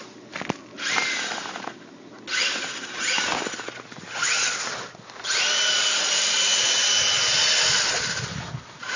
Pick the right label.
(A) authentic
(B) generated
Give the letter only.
A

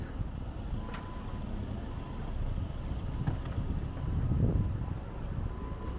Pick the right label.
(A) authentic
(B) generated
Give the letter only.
A